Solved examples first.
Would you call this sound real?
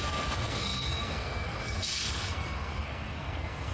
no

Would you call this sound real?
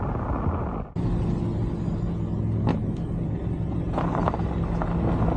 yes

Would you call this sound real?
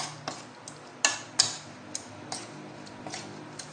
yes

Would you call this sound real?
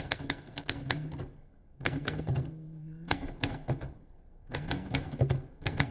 no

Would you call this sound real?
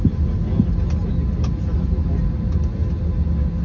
yes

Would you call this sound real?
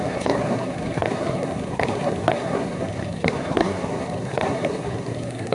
no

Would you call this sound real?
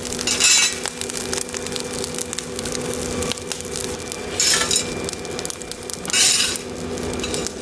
yes